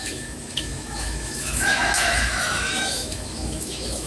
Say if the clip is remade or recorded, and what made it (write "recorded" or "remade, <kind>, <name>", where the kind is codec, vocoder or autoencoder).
remade, autoencoder, DAC-VAE